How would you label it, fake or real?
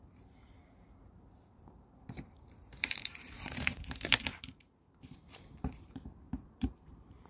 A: fake